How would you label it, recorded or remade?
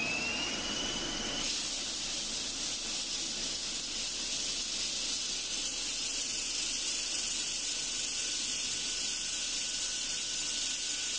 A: recorded